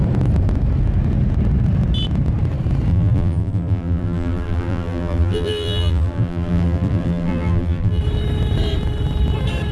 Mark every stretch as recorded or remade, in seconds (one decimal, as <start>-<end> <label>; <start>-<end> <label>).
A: 0.0-2.9 recorded; 2.9-8.0 remade; 8.0-9.7 recorded